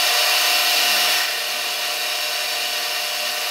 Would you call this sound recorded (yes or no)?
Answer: yes